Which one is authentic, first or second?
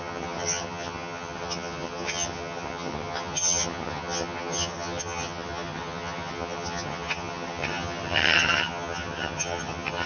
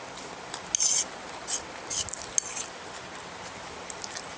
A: second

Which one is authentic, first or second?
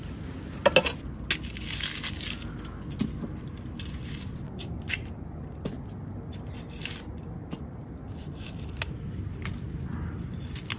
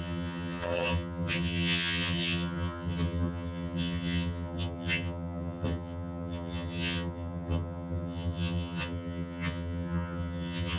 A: first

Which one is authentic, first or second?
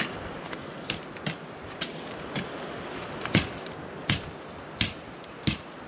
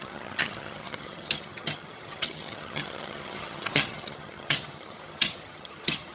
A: first